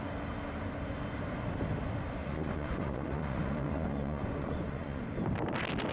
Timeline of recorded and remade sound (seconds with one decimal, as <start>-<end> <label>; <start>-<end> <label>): 0.0-2.2 recorded; 2.2-5.0 remade; 5.0-5.9 recorded